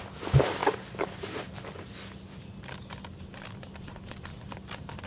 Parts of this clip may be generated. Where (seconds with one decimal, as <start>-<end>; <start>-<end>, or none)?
none